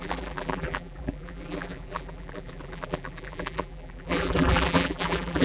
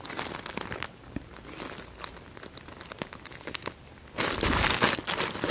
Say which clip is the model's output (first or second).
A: first